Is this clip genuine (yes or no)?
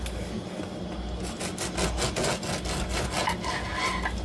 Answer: yes